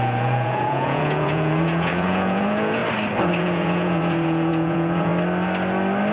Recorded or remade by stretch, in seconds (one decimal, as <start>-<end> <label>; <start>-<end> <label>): 0.0-2.8 remade; 2.8-3.4 recorded; 3.4-5.1 remade; 5.1-6.1 recorded